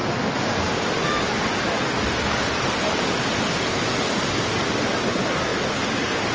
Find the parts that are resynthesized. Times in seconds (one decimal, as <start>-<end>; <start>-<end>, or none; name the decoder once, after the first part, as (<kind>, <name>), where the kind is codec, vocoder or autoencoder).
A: none